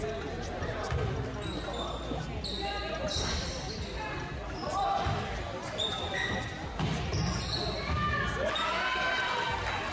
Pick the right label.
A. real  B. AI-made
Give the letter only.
A